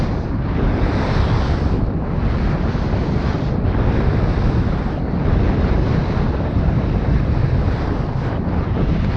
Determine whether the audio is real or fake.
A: real